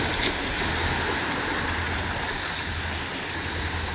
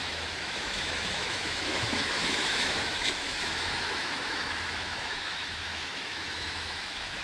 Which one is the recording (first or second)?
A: first